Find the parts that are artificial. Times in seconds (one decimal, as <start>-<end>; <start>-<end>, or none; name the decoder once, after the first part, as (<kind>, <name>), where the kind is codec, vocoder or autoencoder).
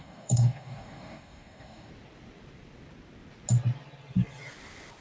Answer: 0.0-1.9 (codec, DAC)